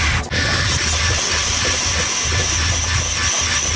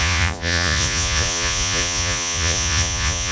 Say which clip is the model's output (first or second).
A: second